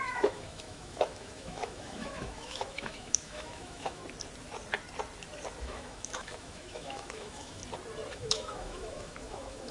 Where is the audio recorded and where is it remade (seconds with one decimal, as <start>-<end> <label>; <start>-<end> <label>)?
0.0-4.0 remade; 4.0-5.6 recorded; 5.6-7.6 remade; 7.6-8.1 recorded; 8.1-9.7 remade

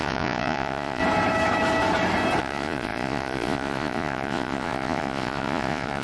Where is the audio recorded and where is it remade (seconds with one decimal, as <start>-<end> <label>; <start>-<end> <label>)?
0.0-1.0 remade; 1.0-2.4 recorded; 2.4-6.0 remade

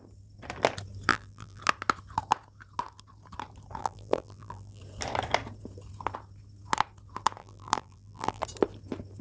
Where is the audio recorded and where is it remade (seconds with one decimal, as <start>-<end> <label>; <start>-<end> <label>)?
0.0-1.1 recorded; 1.1-1.6 remade; 1.6-3.8 recorded; 3.8-4.8 remade; 4.8-7.4 recorded; 7.4-8.4 remade; 8.4-9.2 recorded

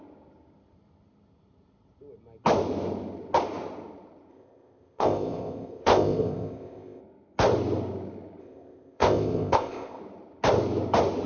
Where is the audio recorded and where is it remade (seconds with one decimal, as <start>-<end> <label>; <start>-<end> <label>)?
0.0-4.3 recorded; 4.3-7.0 remade; 7.0-8.4 recorded; 8.4-10.0 remade; 10.0-11.3 recorded

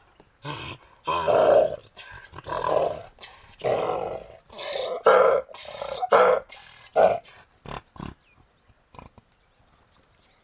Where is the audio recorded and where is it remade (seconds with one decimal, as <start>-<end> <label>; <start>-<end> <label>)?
0.0-10.4 recorded

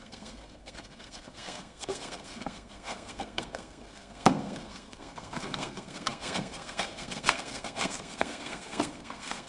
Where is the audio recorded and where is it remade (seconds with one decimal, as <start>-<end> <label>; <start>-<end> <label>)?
0.0-9.5 remade